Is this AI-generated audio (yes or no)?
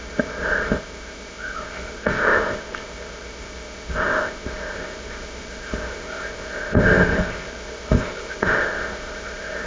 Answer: yes